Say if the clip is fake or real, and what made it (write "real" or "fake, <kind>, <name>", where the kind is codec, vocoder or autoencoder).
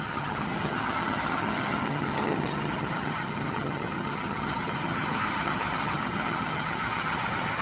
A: fake, vocoder, HiFi-GAN